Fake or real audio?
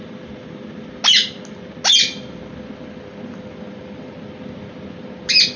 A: real